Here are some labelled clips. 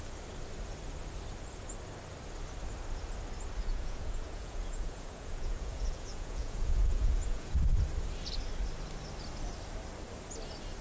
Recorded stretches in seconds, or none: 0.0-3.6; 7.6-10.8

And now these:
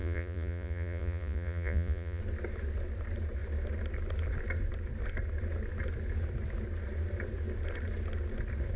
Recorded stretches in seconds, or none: 2.2-8.8

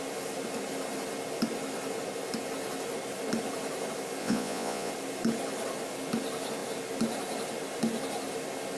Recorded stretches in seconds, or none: 0.0-4.2; 4.9-8.8

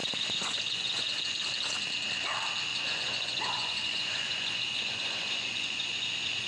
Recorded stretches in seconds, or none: 1.2-2.7

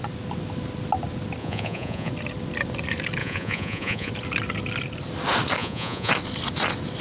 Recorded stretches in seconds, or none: 0.0-1.4; 2.1-3.2; 4.1-5.6; 6.1-7.0

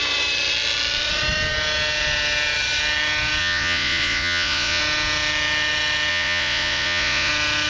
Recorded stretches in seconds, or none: 0.0-3.4; 4.8-6.1; 7.3-7.7

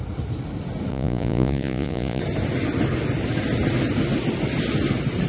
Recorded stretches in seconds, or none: 0.0-0.9; 2.2-5.3

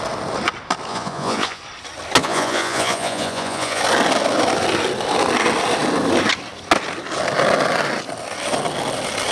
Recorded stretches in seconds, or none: 0.0-0.9; 1.6-2.2; 3.8-9.3